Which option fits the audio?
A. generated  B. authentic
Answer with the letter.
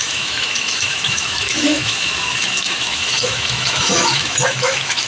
A